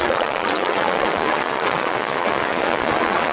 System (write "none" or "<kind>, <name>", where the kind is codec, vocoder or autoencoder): vocoder, Vocos